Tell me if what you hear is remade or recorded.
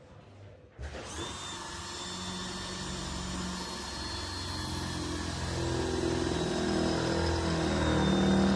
recorded